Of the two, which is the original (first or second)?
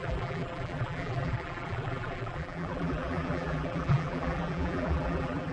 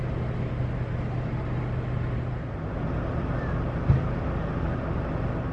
second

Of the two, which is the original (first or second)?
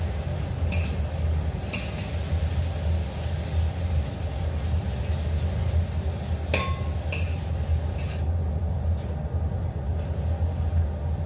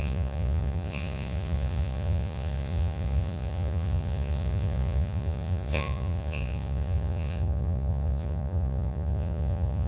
first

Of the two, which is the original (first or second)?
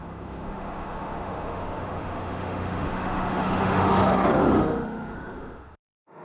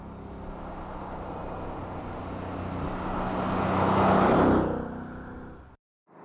second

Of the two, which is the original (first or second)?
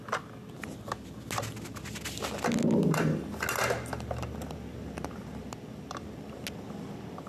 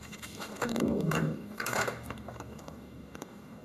first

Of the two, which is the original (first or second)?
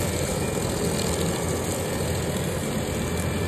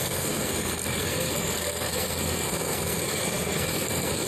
first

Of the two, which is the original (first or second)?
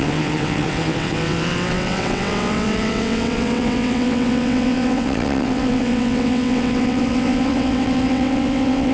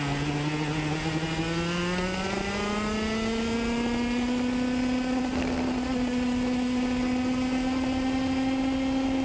second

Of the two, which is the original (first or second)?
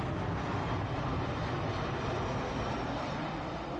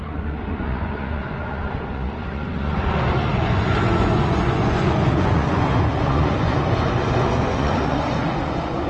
first